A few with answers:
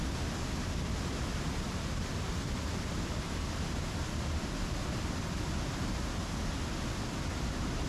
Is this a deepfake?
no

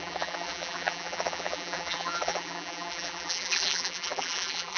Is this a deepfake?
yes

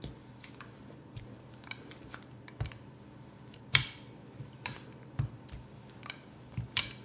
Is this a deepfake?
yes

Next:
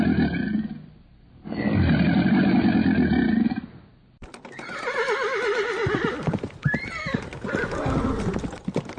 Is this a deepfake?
no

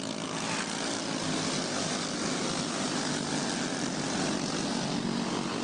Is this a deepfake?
no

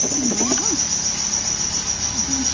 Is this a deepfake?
no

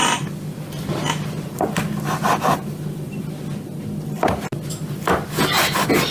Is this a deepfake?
no